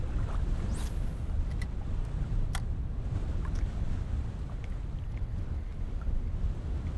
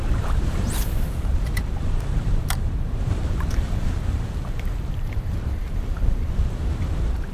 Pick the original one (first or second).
first